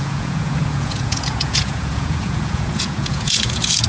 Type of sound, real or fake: fake